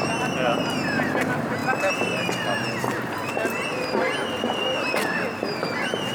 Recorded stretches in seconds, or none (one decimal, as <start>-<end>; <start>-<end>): 0.0-6.1